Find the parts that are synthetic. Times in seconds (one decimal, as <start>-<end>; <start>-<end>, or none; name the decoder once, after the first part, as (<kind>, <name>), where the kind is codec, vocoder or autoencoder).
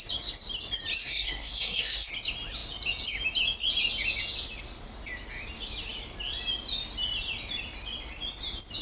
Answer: 1.0-2.1 (codec, SNAC)